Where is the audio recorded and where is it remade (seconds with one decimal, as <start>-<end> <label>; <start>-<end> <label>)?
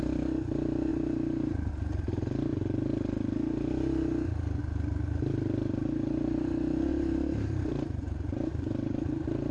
0.0-0.9 recorded; 0.9-1.7 remade; 1.7-6.9 recorded; 6.9-9.5 remade